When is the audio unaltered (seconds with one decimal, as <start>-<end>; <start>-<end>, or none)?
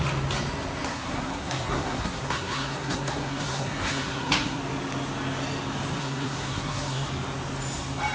0.0-0.9; 4.6-6.0; 7.1-8.1